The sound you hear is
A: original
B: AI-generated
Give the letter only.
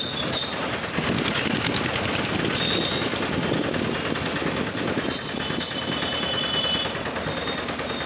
A